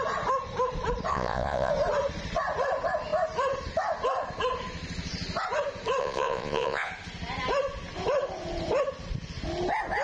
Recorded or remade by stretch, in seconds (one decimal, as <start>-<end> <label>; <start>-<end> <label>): 0.0-1.1 recorded; 1.1-1.7 remade; 1.7-6.0 recorded; 6.0-6.9 remade; 6.9-10.0 recorded